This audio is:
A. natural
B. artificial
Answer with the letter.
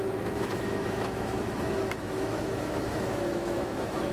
B